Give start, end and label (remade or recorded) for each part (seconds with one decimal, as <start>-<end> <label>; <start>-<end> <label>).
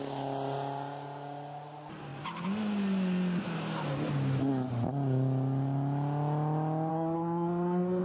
0.0-6.9 recorded; 6.9-8.0 remade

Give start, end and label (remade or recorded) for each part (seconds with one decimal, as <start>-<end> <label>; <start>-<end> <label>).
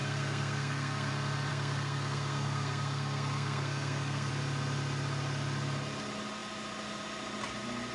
0.0-1.1 remade; 1.1-1.5 recorded; 1.5-4.3 remade; 4.3-7.9 recorded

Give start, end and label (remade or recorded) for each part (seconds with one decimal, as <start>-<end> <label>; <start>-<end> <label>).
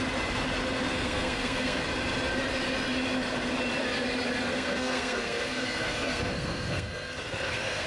0.0-0.9 recorded; 0.9-1.8 remade; 1.8-4.5 recorded; 4.5-7.9 remade